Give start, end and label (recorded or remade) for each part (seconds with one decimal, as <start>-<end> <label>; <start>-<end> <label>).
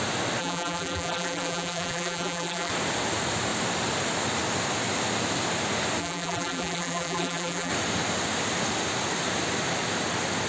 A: 0.0-0.4 recorded; 0.4-2.7 remade; 2.7-6.0 recorded; 6.0-7.7 remade; 7.7-10.5 recorded